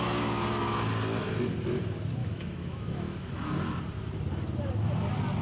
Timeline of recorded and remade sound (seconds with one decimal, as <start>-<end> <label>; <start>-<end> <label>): 0.0-2.2 recorded; 2.2-3.5 remade; 3.5-5.4 recorded